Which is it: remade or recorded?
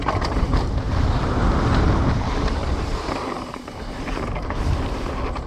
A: remade